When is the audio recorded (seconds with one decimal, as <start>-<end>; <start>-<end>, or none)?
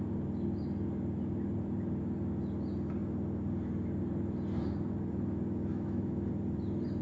0.0-5.7; 6.3-7.0